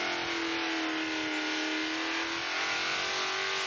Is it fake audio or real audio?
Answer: real